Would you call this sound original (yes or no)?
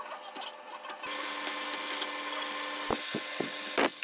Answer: yes